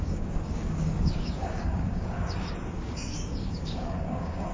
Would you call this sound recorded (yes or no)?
no